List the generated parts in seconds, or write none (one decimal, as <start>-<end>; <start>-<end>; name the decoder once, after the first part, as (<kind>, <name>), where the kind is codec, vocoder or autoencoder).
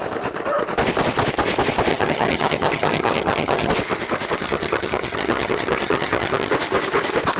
1.9-3.7 (vocoder, HiFi-GAN); 4.4-6.5